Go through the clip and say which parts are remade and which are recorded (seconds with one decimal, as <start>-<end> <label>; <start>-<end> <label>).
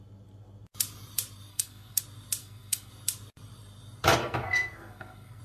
0.0-1.5 recorded; 1.5-2.0 remade; 2.0-2.4 recorded; 2.4-2.9 remade; 2.9-4.2 recorded; 4.2-5.4 remade